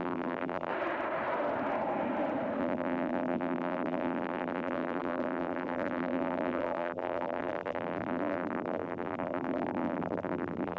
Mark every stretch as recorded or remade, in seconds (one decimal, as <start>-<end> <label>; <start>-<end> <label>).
0.0-0.7 remade; 0.7-2.6 recorded; 2.6-10.8 remade